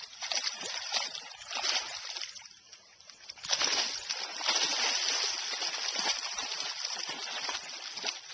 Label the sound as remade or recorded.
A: recorded